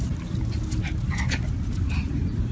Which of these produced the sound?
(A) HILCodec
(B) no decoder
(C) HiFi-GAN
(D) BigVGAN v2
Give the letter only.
B